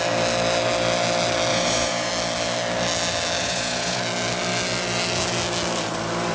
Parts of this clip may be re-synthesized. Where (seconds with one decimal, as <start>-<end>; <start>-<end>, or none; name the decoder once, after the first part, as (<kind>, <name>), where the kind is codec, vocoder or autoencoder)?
1.5-2.1 (vocoder, Vocos); 3.4-4.0